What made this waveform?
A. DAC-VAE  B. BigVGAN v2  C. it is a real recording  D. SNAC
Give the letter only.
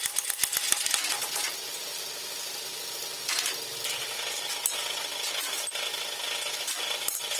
C